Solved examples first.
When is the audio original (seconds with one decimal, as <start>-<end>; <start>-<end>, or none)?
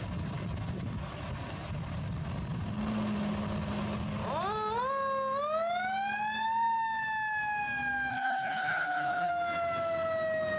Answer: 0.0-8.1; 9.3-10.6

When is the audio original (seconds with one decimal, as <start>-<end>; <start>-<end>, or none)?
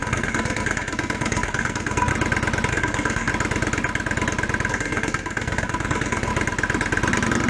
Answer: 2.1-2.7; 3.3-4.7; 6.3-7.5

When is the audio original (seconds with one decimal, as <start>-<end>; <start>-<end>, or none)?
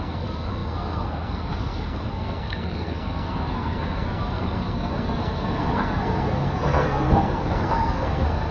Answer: none